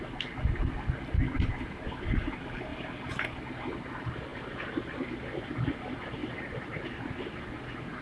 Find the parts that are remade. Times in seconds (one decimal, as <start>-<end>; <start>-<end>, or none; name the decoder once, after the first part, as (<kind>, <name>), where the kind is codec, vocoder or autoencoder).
2.7-3.4 (vocoder, BigVGAN v2); 6.2-7.4